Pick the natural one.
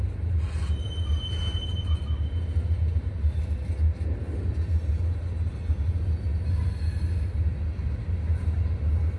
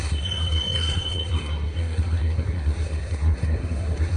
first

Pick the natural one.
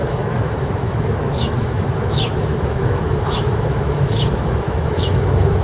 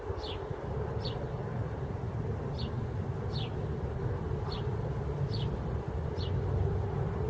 second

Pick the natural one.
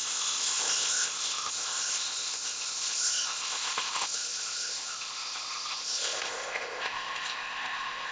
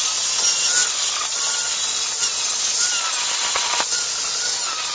second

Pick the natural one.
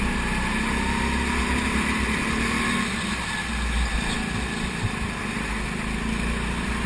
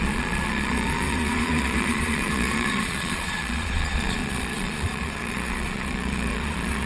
first